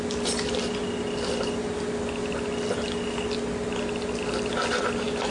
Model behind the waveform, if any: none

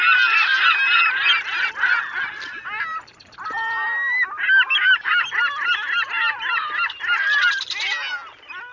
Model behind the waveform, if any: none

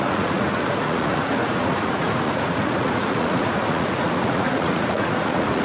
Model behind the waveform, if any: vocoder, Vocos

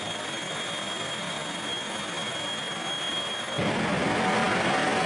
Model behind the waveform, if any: none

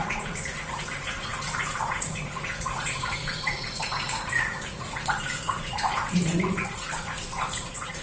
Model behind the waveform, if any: vocoder, Vocos